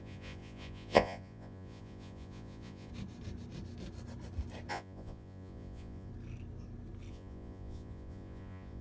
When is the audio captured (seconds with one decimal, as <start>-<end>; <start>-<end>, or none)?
2.9-4.7; 6.1-7.1